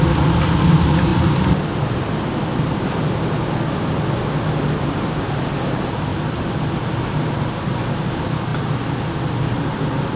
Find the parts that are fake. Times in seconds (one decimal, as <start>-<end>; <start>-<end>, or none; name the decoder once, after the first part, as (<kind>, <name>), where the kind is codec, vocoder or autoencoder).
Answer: 1.1-3.2 (vocoder, BigVGAN v2); 6.1-6.9